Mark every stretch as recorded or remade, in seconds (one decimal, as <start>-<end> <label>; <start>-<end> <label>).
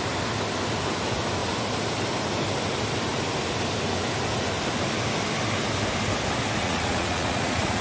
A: 0.0-6.6 recorded; 6.6-7.8 remade